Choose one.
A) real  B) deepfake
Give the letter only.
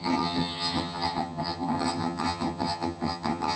B